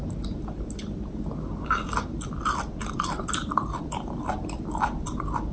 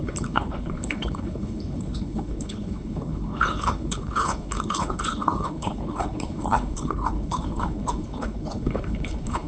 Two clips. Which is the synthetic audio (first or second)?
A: second